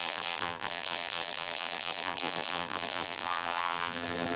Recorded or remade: remade